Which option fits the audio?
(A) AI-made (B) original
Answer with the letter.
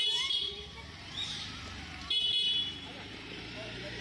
A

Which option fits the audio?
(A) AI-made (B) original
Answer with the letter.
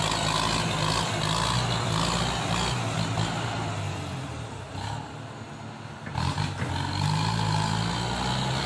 B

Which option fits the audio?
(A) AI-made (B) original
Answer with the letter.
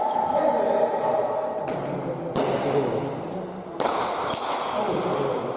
B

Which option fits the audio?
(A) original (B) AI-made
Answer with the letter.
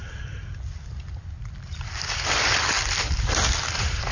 B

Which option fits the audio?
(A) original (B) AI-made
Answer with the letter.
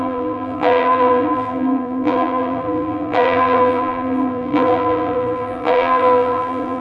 B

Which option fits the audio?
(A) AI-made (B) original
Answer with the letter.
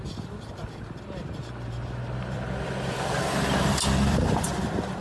A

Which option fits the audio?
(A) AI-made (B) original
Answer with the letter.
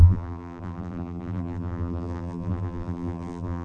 A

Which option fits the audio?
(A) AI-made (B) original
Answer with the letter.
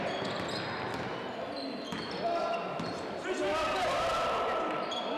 B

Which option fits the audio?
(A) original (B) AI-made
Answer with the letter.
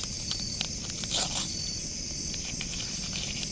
A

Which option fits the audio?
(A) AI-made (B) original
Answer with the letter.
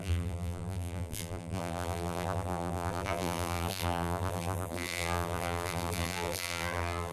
A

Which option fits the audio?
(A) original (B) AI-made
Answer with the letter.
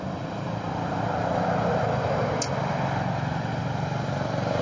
A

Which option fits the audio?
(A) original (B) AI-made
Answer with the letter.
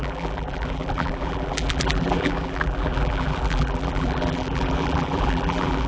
B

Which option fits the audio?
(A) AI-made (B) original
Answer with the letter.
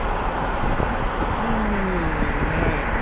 B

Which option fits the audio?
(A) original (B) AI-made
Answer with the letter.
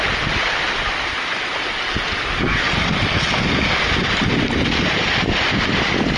A